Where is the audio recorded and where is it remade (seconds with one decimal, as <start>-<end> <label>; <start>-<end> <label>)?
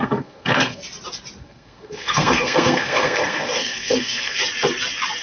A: 0.0-0.8 remade; 0.8-1.4 recorded; 1.4-4.4 remade; 4.4-5.2 recorded